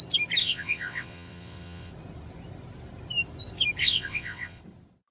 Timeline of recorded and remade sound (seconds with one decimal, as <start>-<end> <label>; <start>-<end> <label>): 0.0-0.4 recorded; 0.4-1.9 remade; 1.9-3.8 recorded; 3.8-4.6 remade; 4.6-5.1 recorded